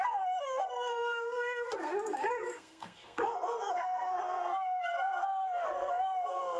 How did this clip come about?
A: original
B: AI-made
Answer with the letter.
B